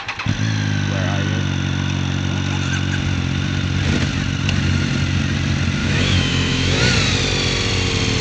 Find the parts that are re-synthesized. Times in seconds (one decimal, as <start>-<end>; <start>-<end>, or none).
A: 5.8-6.8